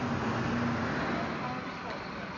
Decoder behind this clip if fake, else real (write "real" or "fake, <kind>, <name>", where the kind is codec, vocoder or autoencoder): real